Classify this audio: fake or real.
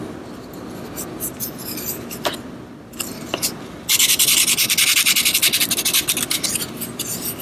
real